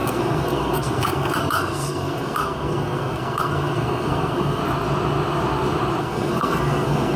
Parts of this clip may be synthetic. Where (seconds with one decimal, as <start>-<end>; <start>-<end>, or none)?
0.0-4.6; 6.0-7.2